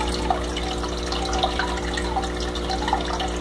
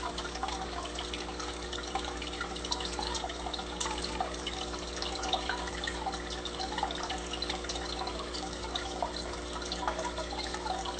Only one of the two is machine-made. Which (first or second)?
second